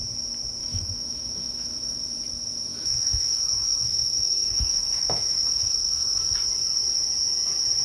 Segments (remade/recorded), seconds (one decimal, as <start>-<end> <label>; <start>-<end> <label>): 0.0-0.6 recorded; 0.6-2.0 remade; 2.0-2.7 recorded; 2.7-6.2 remade; 6.2-7.8 recorded